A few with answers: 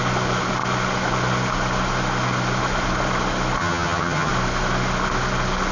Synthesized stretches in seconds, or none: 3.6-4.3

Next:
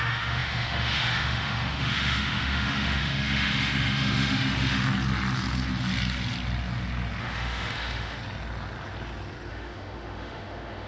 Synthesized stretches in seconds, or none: 0.0-4.8; 7.2-8.2; 9.5-10.9

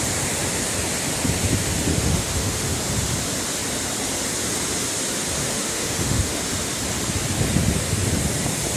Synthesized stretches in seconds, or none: 1.9-2.8; 5.4-6.4

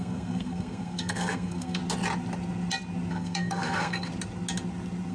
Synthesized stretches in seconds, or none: 0.0-1.8; 3.1-4.1

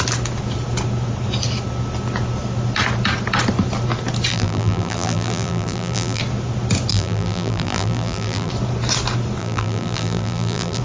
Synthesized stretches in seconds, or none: 4.3-6.2; 6.9-8.5; 9.4-10.8